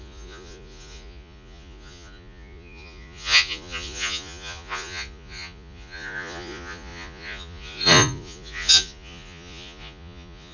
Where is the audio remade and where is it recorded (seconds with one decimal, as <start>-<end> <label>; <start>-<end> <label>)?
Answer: 0.0-10.5 remade